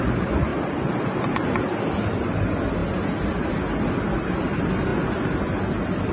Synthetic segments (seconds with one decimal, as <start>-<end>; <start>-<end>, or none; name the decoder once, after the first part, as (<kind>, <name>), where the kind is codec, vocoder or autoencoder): none